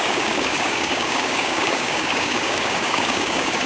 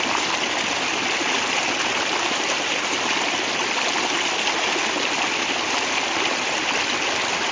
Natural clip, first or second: second